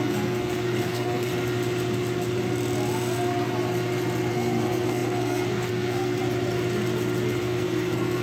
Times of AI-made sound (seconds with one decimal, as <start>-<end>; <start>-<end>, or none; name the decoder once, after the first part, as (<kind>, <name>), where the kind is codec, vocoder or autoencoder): 0.0-1.3 (codec, SNAC); 4.3-6.2; 7.4-8.2